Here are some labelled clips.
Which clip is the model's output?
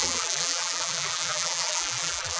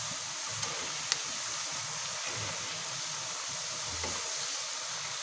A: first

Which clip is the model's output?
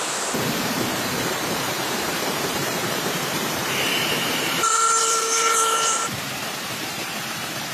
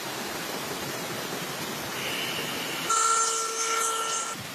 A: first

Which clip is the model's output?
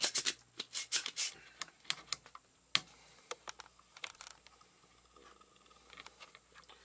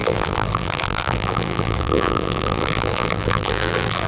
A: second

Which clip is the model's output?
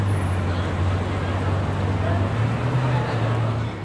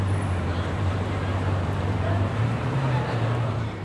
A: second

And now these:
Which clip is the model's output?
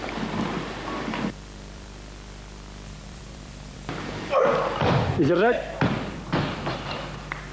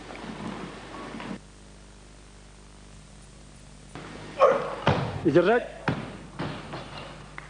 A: first